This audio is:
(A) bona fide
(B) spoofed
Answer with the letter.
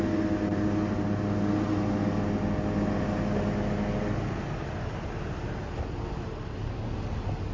A